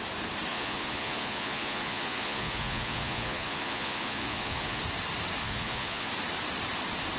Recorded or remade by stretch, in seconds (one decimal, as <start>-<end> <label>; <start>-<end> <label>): 0.0-0.5 recorded; 0.5-4.8 remade; 4.8-5.4 recorded; 5.4-6.1 remade; 6.1-7.2 recorded